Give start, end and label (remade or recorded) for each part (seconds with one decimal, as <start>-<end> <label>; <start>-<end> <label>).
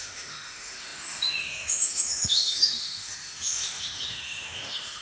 0.0-5.0 remade